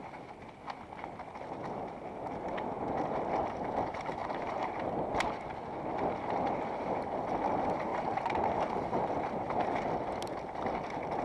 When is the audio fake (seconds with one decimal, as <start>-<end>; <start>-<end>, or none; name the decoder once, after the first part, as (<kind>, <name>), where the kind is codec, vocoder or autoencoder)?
4.2-4.7 (vocoder, BigVGAN v2); 7.9-9.1